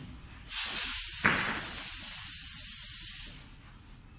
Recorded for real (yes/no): yes